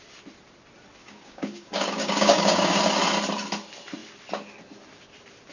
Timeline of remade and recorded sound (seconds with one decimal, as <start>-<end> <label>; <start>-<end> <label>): 0.0-1.0 recorded; 1.0-2.8 remade; 2.8-5.5 recorded